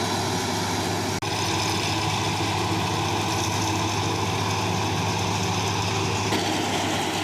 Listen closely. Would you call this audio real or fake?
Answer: real